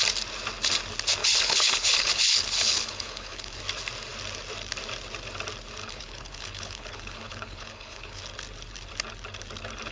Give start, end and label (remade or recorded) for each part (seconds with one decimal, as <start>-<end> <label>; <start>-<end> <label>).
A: 0.0-1.2 recorded; 1.2-3.6 remade; 3.6-5.8 recorded; 5.8-8.2 remade; 8.2-9.9 recorded